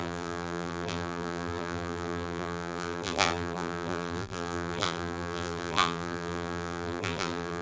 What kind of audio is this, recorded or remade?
remade